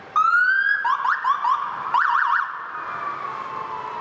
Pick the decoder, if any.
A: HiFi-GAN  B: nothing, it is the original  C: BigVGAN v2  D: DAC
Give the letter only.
B